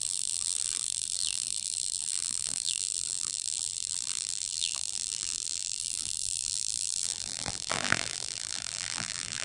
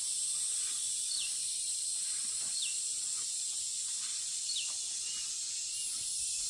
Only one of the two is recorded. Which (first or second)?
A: second